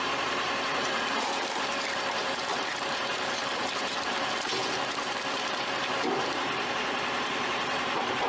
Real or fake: fake